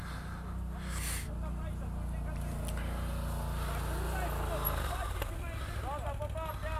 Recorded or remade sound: recorded